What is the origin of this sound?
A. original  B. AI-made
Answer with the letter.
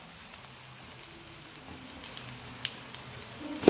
A